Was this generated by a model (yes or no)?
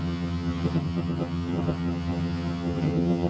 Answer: yes